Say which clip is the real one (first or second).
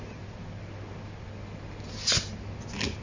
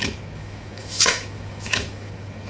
first